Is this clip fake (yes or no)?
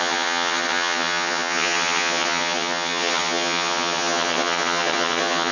yes